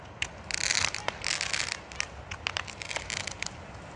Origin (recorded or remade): recorded